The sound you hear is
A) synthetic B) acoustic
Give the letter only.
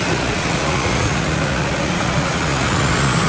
A